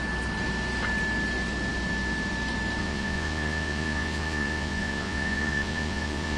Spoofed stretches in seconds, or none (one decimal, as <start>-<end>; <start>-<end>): 2.8-6.4